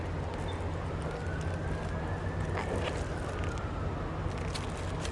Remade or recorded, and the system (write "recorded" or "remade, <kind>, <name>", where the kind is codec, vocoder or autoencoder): recorded